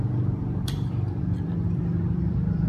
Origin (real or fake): fake